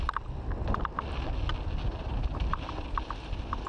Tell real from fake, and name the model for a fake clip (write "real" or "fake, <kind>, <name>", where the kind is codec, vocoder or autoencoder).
real